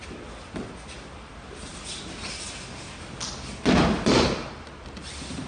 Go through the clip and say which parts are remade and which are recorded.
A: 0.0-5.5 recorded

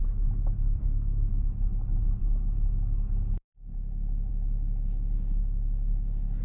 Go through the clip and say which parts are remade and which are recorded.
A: 0.0-0.8 recorded; 0.8-1.3 remade; 1.3-6.4 recorded